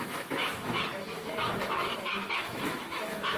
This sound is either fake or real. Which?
fake